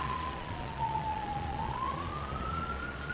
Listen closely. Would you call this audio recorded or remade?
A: remade